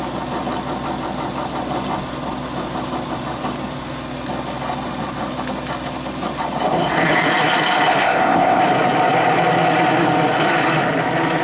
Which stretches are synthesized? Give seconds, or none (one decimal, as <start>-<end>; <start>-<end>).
8.0-8.6